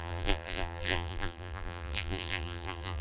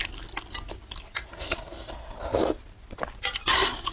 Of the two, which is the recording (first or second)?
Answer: second